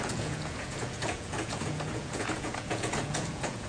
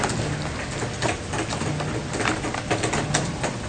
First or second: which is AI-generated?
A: first